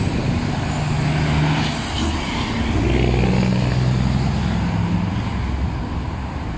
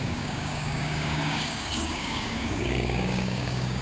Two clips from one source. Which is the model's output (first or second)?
second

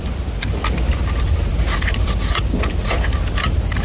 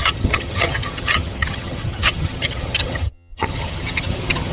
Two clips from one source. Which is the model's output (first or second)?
second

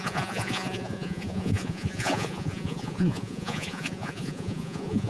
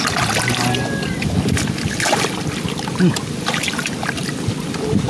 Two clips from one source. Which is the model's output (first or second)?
first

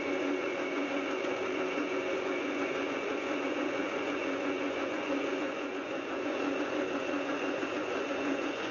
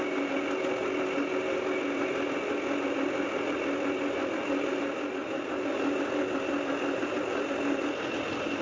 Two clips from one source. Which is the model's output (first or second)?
first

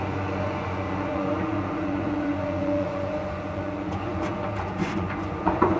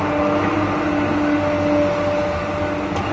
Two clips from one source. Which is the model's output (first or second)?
first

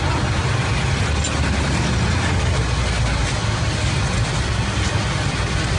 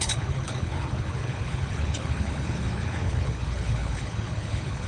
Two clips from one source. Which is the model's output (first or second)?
second